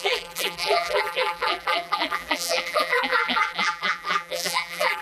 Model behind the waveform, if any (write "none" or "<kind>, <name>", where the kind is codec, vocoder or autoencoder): vocoder, BigVGAN v2